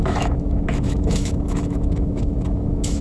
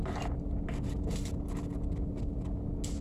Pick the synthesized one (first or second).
first